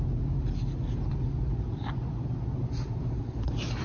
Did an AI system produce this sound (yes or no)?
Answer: no